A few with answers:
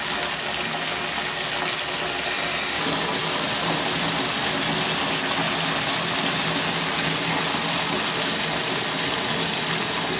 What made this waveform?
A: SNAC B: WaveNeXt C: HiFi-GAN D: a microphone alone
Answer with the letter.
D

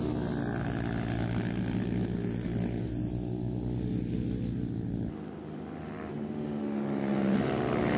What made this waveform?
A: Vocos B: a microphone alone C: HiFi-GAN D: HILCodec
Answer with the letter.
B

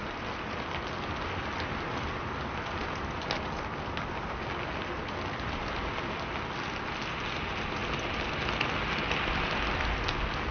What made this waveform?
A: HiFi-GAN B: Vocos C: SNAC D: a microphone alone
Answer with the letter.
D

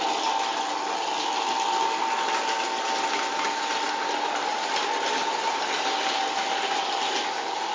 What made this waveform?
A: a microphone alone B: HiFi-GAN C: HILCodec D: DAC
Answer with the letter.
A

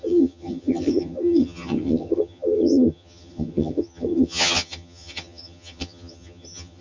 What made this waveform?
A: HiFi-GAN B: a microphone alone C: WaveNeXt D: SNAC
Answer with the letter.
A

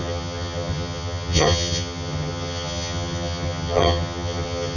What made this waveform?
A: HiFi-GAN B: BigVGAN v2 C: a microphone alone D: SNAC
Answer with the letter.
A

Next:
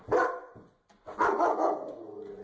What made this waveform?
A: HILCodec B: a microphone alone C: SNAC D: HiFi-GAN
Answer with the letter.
B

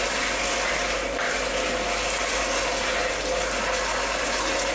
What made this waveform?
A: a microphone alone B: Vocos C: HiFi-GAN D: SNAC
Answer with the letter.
A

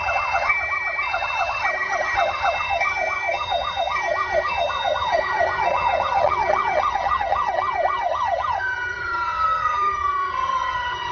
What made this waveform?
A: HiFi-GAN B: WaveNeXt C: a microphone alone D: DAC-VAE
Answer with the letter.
A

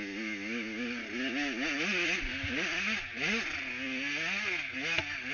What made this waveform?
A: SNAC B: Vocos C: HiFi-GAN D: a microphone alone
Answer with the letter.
D